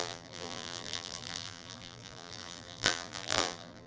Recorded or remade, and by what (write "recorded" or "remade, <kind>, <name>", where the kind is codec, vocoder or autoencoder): remade, vocoder, BigVGAN v2